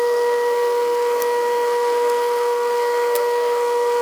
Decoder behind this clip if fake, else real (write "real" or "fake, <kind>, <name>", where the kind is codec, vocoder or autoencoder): fake, codec, SNAC